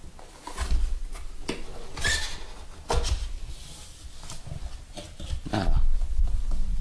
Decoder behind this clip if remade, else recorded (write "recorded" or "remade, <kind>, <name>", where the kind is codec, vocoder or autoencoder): recorded